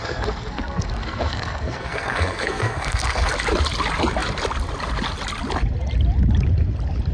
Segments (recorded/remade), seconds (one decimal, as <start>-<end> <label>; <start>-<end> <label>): 0.0-3.3 remade; 3.3-7.1 recorded